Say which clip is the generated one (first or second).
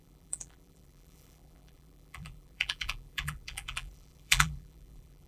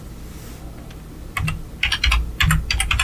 first